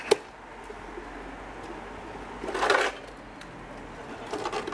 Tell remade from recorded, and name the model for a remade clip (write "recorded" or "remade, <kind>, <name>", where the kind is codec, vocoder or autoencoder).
recorded